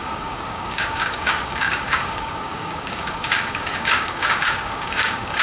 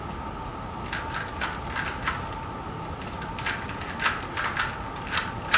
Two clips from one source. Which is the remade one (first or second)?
first